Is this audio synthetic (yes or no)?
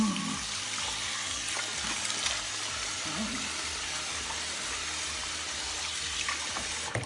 no